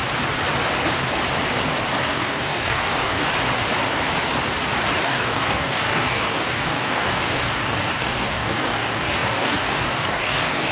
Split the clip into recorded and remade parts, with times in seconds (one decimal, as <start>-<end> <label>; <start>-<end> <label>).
0.0-2.0 recorded; 2.0-3.3 remade; 3.3-5.0 recorded; 5.0-10.7 remade